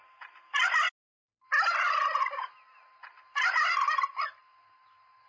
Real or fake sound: real